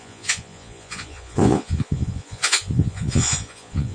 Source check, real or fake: fake